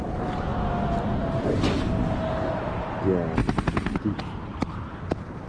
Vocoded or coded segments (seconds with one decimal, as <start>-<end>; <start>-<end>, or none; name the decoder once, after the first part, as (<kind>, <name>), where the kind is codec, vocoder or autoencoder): 3.4-4.0 (vocoder, BigVGAN v2)